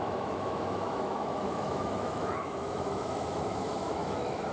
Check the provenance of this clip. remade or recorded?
remade